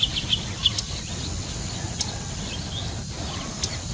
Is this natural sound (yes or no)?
yes